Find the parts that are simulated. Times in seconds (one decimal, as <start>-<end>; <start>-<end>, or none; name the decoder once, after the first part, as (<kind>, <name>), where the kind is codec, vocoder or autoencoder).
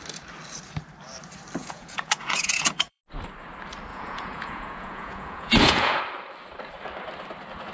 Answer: 1.6-3.0 (vocoder, Vocos); 3.9-6.0